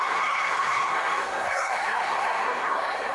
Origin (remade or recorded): remade